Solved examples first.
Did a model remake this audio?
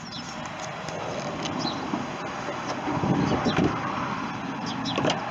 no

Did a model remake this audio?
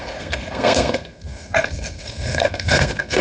yes